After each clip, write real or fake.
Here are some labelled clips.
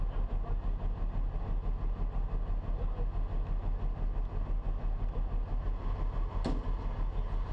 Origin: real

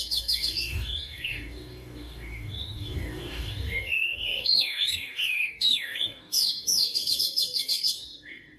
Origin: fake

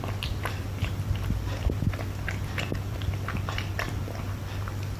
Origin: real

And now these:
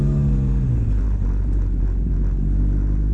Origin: real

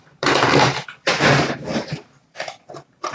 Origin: real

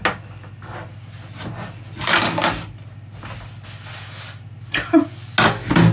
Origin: real